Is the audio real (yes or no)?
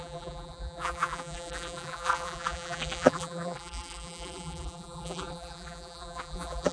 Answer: no